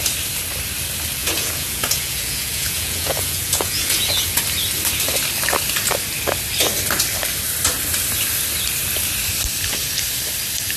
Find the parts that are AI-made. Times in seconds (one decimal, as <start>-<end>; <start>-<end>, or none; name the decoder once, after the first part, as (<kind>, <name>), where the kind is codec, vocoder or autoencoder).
1.2-4.4 (vocoder, Vocos)